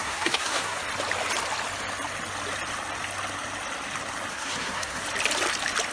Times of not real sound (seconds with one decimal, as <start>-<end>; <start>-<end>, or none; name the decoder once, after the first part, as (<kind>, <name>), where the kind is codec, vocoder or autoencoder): 0.0-0.8 (codec, SNAC); 4.3-5.0